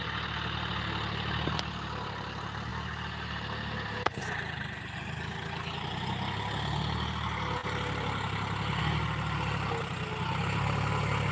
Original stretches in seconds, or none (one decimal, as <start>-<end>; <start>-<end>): 0.0-11.3